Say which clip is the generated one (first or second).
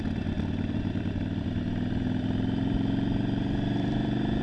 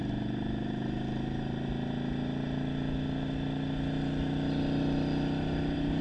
first